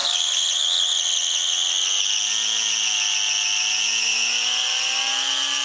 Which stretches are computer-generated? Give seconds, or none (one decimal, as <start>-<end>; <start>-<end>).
none